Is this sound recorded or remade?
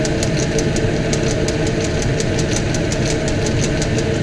recorded